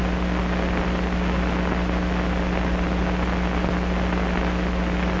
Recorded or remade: recorded